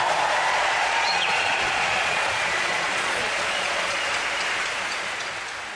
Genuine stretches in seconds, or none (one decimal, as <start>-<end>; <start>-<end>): 0.0-0.5; 4.0-5.8

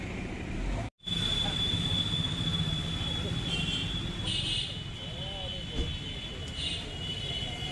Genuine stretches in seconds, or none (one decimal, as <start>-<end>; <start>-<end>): 0.0-7.7

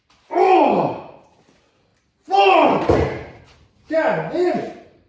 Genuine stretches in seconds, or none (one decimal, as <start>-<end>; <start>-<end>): 0.0-5.1

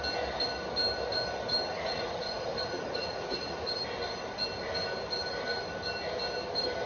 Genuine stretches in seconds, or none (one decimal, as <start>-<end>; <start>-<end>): 0.0-1.7; 3.7-6.9